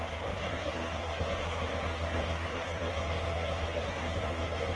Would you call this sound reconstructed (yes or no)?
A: yes